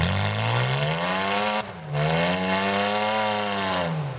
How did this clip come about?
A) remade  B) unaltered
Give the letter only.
B